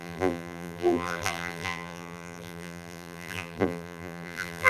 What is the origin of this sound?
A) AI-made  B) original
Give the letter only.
A